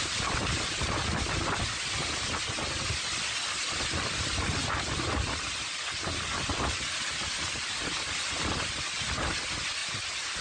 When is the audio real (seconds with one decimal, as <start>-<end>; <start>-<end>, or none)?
0.0-10.4